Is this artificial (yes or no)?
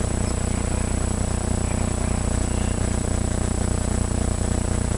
no